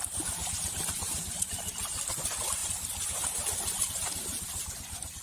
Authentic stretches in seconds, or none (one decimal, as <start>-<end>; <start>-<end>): 0.0-0.4; 1.5-5.2